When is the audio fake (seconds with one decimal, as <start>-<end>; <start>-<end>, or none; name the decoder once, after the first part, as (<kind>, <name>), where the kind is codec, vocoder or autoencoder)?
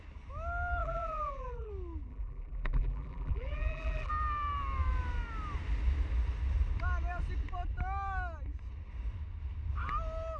0.8-1.7 (vocoder, BigVGAN v2); 2.1-4.1